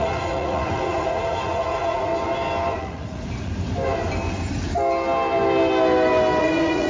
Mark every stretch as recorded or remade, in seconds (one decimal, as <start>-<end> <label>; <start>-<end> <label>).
0.0-2.1 remade; 2.1-2.8 recorded; 2.8-3.5 remade; 3.5-6.4 recorded; 6.4-6.9 remade